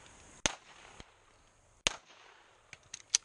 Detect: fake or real real